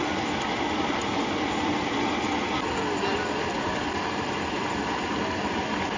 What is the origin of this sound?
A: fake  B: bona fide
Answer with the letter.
B